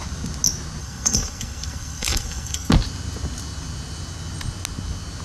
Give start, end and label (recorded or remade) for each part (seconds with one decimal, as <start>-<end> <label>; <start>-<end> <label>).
0.0-0.8 recorded; 0.8-2.7 remade; 2.7-5.2 recorded